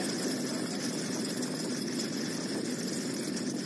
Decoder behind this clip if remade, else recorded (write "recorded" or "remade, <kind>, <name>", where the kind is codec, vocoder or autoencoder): recorded